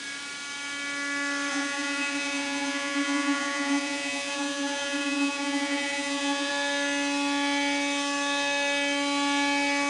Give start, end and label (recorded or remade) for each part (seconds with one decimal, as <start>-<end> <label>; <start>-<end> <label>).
0.0-1.5 recorded; 1.5-6.5 remade; 6.5-9.9 recorded